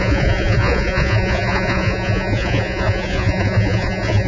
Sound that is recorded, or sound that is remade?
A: remade